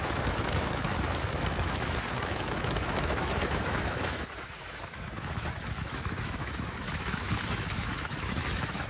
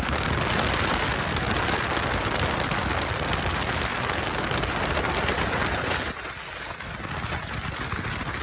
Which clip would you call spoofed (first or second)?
first